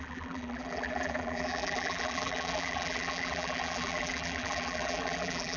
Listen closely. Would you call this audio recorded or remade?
remade